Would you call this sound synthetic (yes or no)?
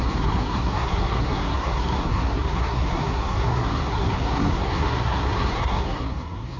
yes